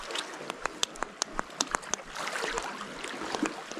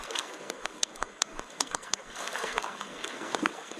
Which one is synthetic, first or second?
second